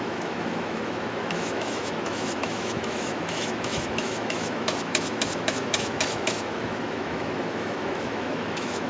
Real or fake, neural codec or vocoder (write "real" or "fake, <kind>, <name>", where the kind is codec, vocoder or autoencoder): fake, autoencoder, DAC-VAE